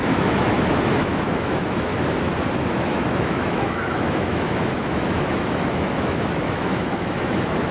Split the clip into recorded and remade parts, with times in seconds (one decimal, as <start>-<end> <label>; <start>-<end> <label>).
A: 0.0-1.9 remade; 1.9-2.7 recorded; 2.7-7.7 remade